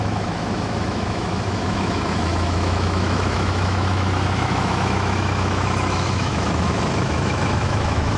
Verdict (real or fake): fake